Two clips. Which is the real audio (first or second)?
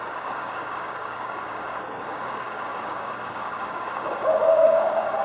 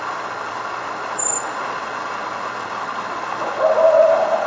second